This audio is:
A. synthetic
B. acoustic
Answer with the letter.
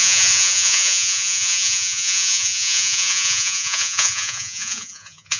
A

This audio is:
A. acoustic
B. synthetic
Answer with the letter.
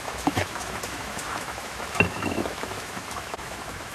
B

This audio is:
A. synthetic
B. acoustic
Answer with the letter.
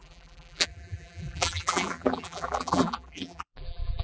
A